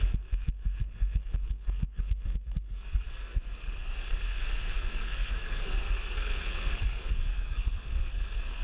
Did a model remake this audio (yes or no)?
yes